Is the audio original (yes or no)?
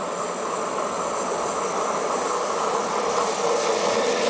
yes